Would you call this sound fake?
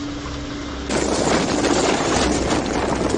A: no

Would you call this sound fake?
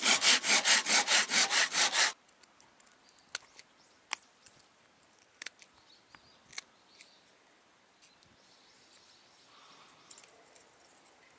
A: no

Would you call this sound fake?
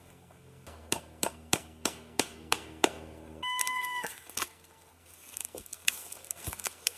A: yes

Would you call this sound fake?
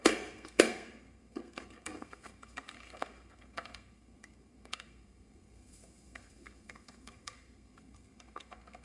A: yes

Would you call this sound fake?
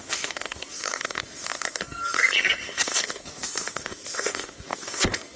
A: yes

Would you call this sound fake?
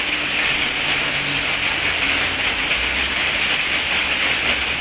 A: no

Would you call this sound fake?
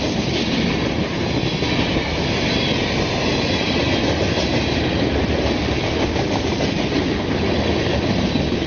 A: no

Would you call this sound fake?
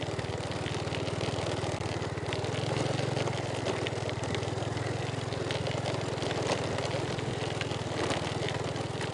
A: no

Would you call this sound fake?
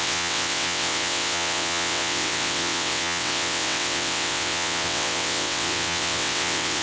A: yes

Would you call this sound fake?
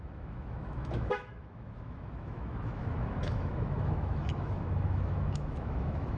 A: yes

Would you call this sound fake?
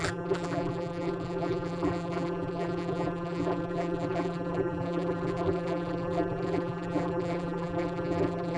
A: yes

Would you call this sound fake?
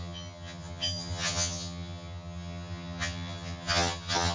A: yes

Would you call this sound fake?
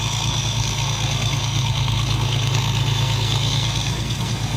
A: yes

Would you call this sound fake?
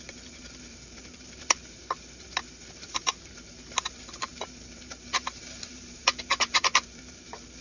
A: yes